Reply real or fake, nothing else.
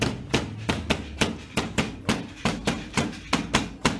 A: real